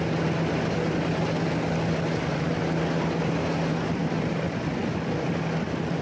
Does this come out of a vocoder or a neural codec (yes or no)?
no